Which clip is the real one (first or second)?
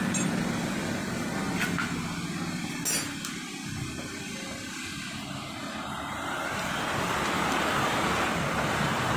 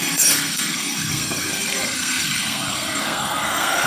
first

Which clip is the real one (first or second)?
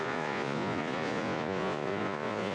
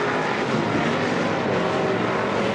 second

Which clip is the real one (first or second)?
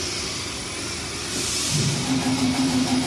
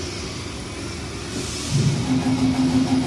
second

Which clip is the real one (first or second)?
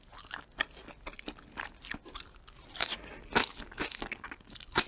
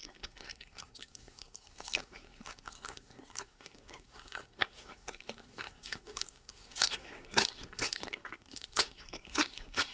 first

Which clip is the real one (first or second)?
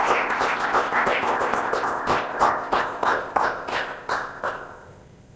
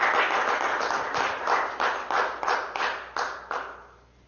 second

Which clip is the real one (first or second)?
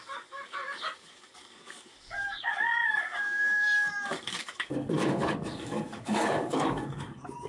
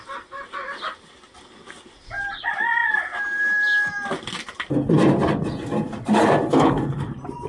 second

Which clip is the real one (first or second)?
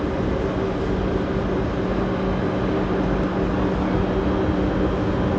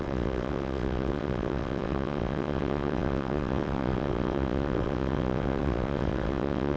first